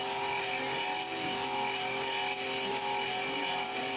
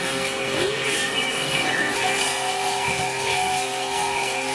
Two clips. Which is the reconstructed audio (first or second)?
second